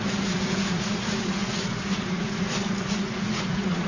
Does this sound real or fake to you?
fake